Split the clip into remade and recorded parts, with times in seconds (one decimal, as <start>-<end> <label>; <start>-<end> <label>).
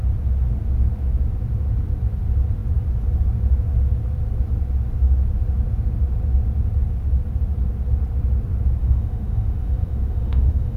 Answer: 0.0-8.8 recorded; 8.8-10.8 remade